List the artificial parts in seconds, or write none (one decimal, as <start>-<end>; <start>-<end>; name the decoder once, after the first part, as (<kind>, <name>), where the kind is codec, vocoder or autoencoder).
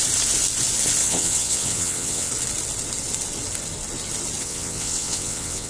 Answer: 1.0-2.3 (vocoder, WaveNeXt); 4.4-5.7